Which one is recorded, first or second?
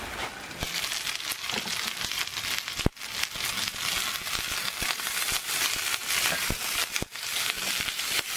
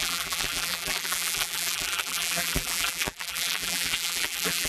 first